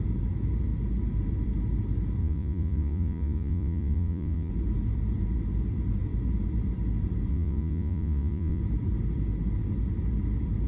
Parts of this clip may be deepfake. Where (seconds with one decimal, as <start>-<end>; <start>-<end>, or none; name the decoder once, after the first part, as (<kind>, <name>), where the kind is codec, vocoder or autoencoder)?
2.2-4.5 (vocoder, Vocos); 7.3-8.6